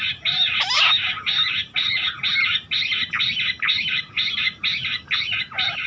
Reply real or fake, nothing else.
real